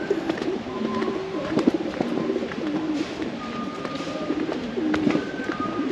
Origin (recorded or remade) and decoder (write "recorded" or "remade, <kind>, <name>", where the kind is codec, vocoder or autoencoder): remade, vocoder, BigVGAN v2